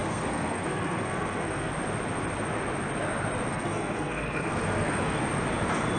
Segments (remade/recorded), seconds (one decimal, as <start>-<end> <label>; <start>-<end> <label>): 0.0-1.7 remade; 1.7-3.5 recorded; 3.5-5.2 remade; 5.2-6.0 recorded